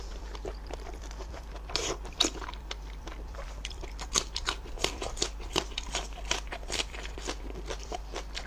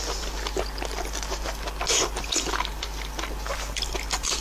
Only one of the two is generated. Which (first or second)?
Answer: first